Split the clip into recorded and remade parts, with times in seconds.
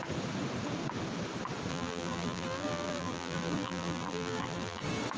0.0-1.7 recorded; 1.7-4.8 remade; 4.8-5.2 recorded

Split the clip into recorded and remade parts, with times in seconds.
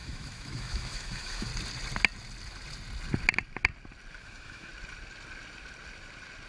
0.0-1.5 remade; 1.5-4.2 recorded; 4.2-4.7 remade; 4.7-6.5 recorded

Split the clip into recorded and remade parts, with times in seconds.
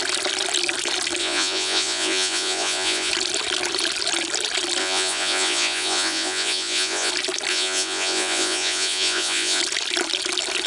0.0-1.2 recorded; 1.2-3.1 remade; 3.1-4.8 recorded; 4.8-7.1 remade; 7.1-7.5 recorded; 7.5-9.6 remade; 9.6-10.7 recorded